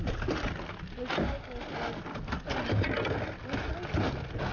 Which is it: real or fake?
real